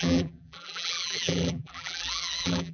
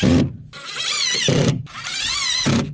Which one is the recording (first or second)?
second